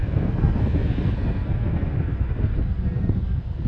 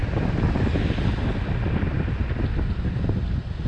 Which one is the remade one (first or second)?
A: first